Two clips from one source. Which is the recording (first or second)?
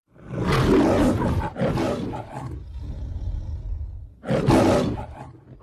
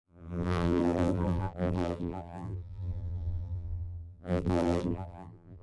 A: first